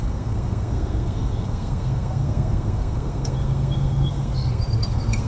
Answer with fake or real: fake